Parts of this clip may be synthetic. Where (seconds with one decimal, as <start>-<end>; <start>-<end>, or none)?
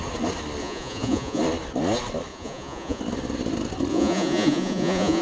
0.6-1.4; 2.3-3.0; 3.9-5.2